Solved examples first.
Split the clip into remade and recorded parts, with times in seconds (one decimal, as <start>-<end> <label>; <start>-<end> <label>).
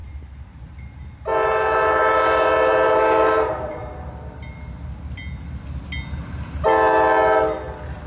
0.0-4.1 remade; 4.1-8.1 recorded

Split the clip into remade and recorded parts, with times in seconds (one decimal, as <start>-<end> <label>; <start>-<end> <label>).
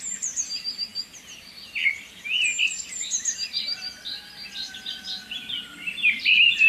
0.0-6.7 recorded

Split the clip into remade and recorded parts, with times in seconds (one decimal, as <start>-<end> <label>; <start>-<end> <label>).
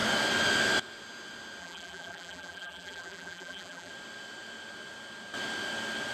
0.0-1.6 recorded; 1.6-3.9 remade; 3.9-6.1 recorded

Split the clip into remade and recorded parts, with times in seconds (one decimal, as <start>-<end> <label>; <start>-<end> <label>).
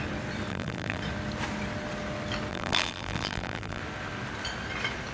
0.0-0.5 recorded; 0.5-1.0 remade; 1.0-2.5 recorded; 2.5-3.8 remade; 3.8-5.1 recorded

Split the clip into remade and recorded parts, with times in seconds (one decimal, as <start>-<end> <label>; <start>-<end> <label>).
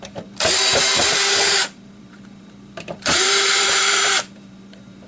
0.0-5.1 remade